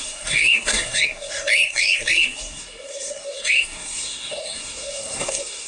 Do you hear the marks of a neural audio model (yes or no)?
yes